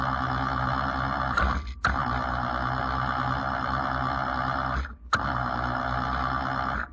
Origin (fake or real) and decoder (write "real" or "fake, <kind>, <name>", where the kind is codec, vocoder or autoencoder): real